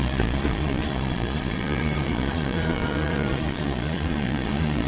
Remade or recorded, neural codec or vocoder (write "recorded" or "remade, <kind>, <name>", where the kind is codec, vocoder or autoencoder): remade, vocoder, Vocos